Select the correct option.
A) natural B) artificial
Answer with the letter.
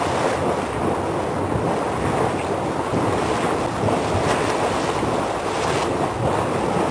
A